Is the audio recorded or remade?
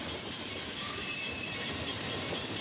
remade